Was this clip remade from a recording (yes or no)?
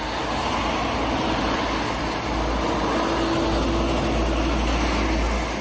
no